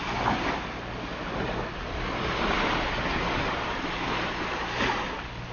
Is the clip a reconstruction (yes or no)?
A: no